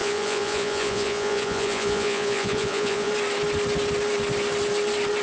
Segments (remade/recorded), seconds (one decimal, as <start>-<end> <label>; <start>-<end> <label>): 0.0-3.1 remade; 3.1-5.2 recorded